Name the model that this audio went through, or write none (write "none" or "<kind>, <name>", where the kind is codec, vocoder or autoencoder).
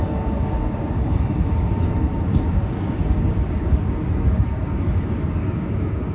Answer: codec, DAC